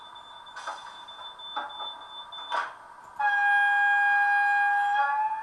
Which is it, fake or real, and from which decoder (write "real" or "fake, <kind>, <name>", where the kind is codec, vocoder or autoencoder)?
real